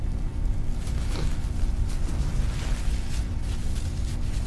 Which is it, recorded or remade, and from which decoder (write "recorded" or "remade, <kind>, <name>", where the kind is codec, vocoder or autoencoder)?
recorded